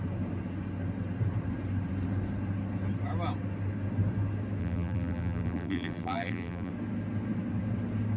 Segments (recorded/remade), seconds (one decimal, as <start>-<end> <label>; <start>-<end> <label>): 0.0-4.6 recorded; 4.6-6.7 remade; 6.7-8.2 recorded